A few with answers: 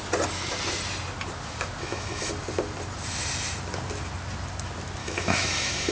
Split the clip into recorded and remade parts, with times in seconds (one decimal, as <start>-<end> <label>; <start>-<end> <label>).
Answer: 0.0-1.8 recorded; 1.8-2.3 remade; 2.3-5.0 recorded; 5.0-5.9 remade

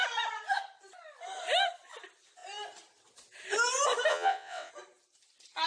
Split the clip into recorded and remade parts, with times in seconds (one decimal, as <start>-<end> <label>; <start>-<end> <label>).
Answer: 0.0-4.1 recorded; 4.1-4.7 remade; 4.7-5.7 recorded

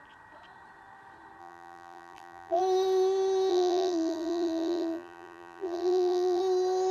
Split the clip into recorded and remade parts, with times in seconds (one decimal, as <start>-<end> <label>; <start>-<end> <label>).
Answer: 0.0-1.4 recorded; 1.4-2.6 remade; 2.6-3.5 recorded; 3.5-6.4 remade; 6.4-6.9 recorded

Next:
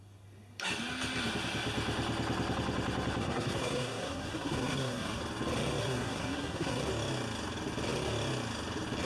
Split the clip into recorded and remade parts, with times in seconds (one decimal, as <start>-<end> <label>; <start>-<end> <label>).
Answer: 0.0-3.2 recorded; 3.2-5.2 remade; 5.2-5.8 recorded; 5.8-6.8 remade; 6.8-9.1 recorded